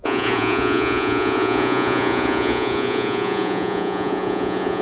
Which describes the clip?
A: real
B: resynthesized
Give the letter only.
B